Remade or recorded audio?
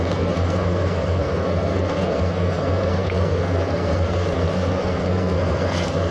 remade